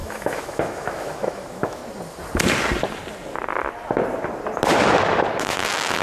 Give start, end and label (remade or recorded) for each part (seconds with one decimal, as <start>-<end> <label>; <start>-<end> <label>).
0.0-1.8 remade; 1.8-5.4 recorded; 5.4-6.0 remade